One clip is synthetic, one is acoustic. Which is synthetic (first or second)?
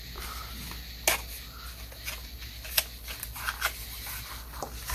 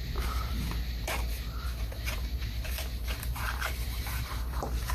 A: second